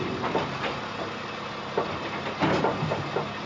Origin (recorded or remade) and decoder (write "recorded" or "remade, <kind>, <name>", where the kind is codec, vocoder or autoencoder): recorded